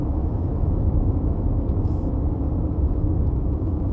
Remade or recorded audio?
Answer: remade